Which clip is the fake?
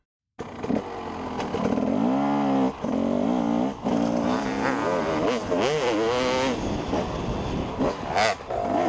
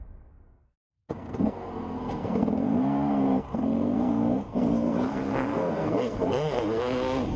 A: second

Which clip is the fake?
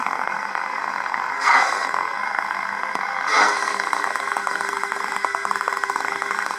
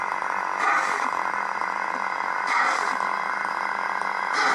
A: first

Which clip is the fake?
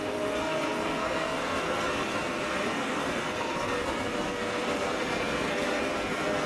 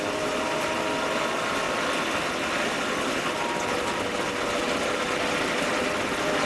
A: first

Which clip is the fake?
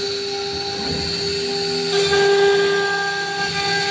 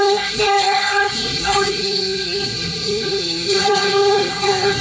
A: second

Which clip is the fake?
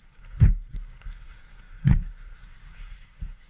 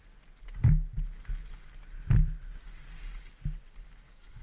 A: first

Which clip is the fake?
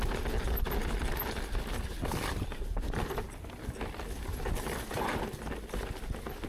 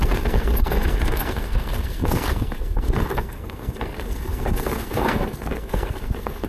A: second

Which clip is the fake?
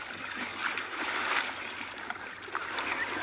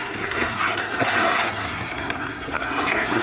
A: second